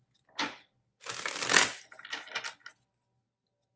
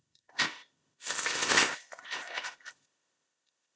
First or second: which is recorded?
first